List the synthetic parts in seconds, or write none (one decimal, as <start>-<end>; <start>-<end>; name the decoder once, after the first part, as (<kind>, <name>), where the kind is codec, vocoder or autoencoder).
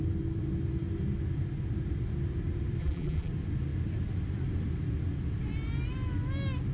2.8-3.3 (vocoder, BigVGAN v2)